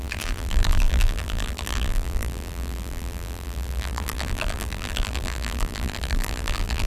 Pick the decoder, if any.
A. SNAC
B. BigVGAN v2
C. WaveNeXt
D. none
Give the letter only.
B